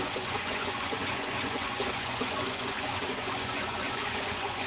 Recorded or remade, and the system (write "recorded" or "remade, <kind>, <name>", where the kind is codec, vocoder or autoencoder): remade, vocoder, Vocos